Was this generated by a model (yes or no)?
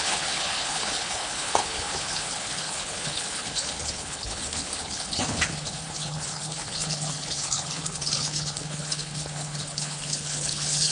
yes